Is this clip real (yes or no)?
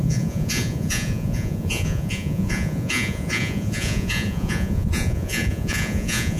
no